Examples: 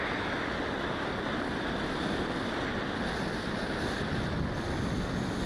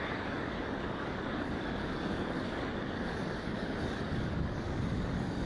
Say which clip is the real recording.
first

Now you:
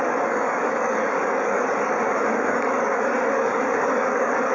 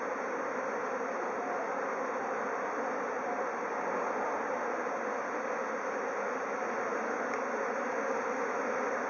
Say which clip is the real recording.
second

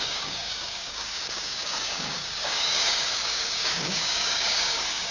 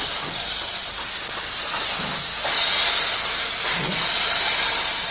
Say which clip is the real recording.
second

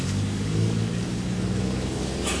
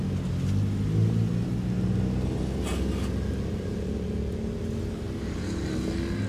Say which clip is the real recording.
second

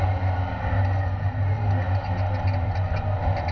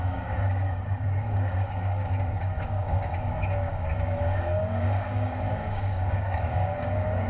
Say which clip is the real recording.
first